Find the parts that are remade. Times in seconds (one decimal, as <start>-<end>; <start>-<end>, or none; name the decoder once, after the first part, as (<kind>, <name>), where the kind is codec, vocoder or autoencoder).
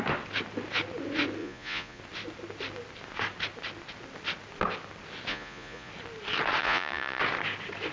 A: 1.4-2.0 (vocoder, Vocos); 5.3-5.9; 6.6-7.2